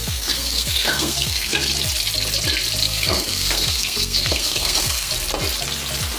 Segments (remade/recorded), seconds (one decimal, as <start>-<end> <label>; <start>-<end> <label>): 0.0-1.7 remade; 1.7-2.8 recorded; 2.8-5.1 remade; 5.1-6.2 recorded